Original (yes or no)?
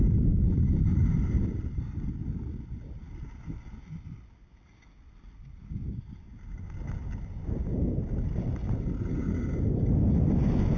yes